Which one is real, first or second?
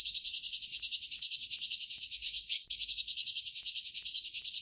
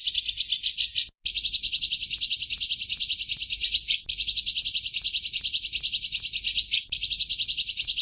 second